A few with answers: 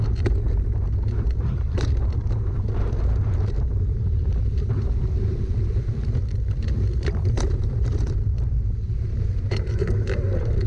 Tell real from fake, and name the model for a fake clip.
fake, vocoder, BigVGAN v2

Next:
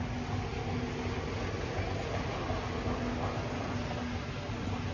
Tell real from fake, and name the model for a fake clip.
real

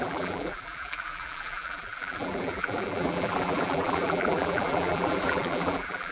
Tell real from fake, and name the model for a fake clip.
fake, vocoder, BigVGAN v2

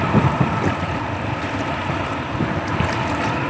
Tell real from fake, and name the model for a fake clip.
fake, vocoder, BigVGAN v2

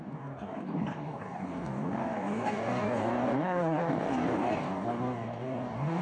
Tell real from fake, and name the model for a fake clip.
fake, codec, DAC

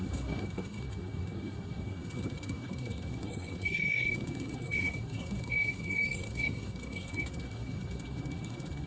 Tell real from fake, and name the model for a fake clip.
fake, codec, SNAC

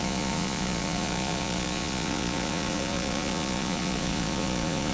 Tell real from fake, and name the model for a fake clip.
fake, vocoder, Vocos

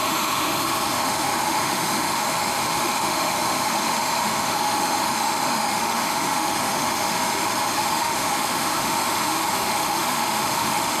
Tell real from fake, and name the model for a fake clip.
fake, autoencoder, DAC-VAE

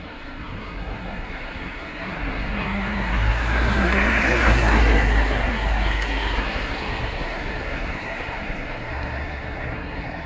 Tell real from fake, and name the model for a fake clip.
fake, codec, SNAC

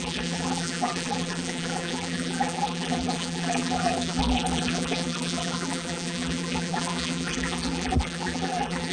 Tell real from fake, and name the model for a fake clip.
fake, vocoder, BigVGAN v2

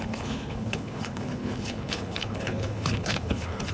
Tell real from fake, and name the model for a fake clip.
fake, codec, HILCodec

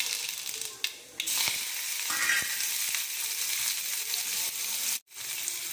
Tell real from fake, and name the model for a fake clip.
real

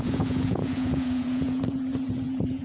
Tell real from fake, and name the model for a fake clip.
fake, vocoder, Vocos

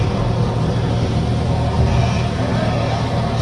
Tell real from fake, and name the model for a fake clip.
real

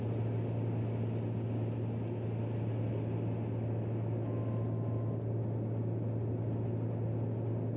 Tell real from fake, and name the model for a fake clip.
real